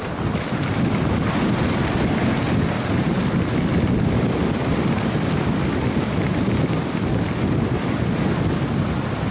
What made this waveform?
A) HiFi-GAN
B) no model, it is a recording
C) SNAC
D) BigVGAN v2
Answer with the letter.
B